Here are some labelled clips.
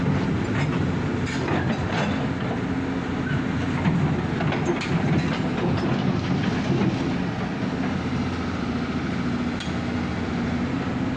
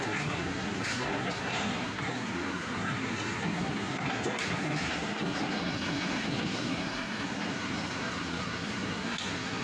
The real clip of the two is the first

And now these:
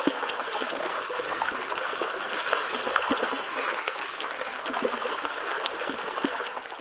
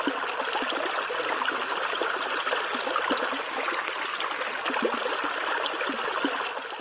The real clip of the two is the second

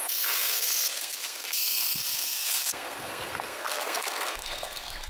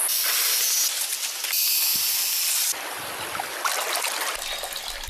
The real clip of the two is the second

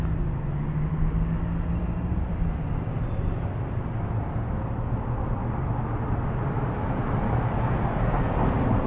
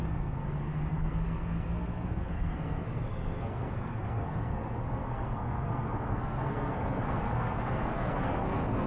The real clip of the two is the first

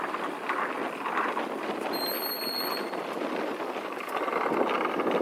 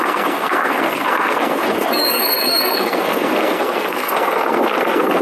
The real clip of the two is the first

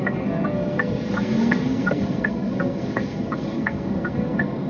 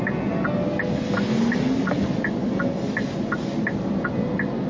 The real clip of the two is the second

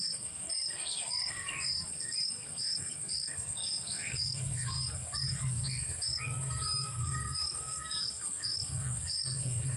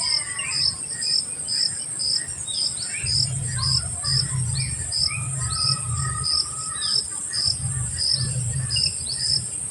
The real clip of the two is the second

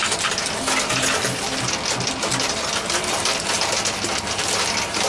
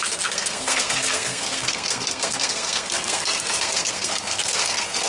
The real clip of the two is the first